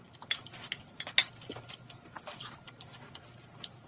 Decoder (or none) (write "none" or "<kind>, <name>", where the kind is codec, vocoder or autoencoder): none